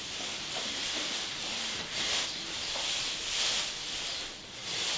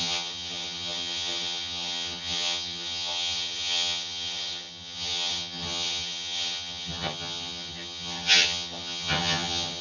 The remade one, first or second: second